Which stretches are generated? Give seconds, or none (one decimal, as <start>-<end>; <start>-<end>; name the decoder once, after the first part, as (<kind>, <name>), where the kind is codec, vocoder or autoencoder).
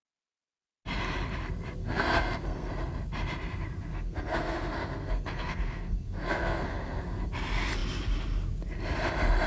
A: 1.8-2.7 (codec, SNAC); 3.9-7.3